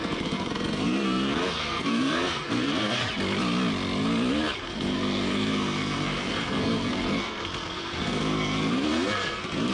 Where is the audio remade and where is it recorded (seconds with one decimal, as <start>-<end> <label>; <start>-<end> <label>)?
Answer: 0.0-3.0 remade; 3.0-4.6 recorded; 4.6-9.7 remade